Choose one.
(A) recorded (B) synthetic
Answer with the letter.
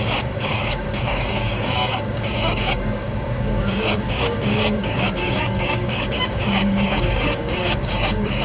B